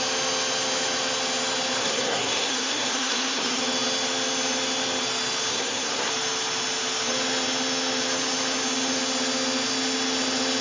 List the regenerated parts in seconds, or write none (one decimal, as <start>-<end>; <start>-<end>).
1.8-3.6; 5.5-6.1